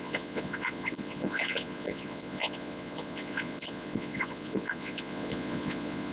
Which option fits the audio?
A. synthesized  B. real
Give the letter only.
A